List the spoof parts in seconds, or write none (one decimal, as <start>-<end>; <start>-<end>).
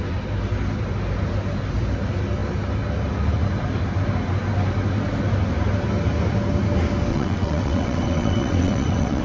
7.1-9.2